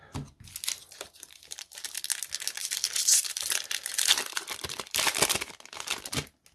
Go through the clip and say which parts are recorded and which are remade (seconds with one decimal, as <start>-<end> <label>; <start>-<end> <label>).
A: 0.0-0.8 recorded; 0.8-2.0 remade; 2.0-2.6 recorded; 2.6-5.3 remade; 5.3-6.5 recorded